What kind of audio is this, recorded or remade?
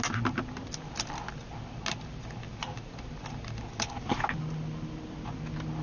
recorded